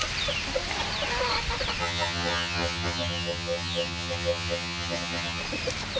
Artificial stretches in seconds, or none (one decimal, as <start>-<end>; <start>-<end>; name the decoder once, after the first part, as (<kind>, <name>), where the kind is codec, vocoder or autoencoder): 1.8-5.4 (vocoder, HiFi-GAN)